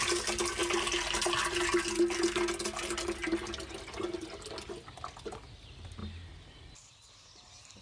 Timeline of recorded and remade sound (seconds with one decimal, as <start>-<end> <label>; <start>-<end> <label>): 0.0-7.8 recorded